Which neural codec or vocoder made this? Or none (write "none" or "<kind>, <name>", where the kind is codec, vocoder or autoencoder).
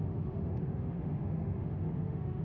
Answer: autoencoder, DAC-VAE